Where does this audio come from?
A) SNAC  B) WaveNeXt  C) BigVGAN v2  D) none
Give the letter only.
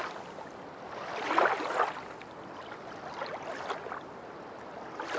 D